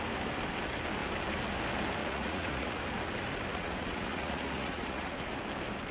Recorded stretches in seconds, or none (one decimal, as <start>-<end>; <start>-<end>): 0.0-2.0; 2.8-3.5; 5.3-5.9